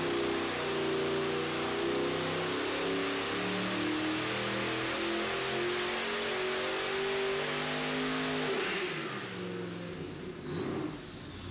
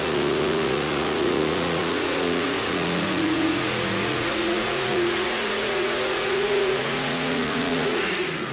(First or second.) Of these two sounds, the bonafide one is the first